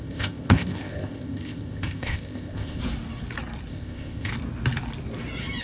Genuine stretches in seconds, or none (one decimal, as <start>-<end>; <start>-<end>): 2.8-3.7; 4.3-5.6